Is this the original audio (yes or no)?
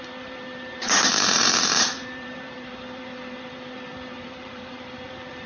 no